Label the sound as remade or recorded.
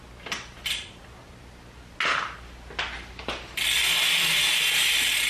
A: recorded